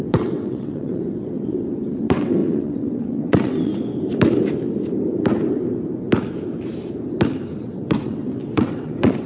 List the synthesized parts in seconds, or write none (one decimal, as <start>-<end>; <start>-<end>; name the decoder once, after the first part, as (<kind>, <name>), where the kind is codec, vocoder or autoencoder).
0.0-3.7 (vocoder, WaveNeXt); 7.6-9.3